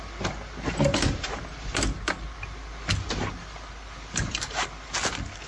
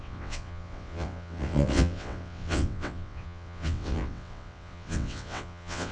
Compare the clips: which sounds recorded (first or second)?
first